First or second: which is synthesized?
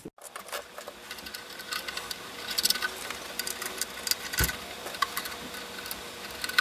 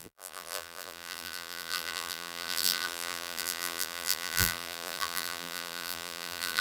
second